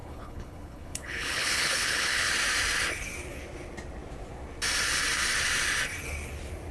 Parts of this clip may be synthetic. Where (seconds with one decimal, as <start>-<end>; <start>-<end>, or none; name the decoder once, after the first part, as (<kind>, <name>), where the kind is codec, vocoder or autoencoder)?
0.0-2.3 (codec, HILCodec)